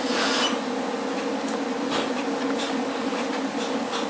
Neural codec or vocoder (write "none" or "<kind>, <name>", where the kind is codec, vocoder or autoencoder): none